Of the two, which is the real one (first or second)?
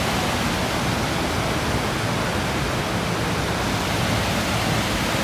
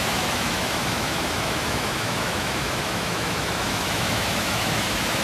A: first